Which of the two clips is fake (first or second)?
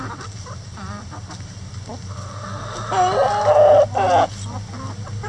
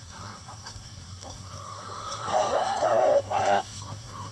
second